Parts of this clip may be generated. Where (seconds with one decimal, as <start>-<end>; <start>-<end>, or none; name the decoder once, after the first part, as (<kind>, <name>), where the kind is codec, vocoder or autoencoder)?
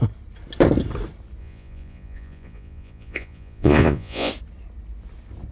1.4-4.3 (vocoder, Vocos)